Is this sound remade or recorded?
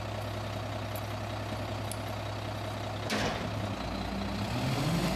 recorded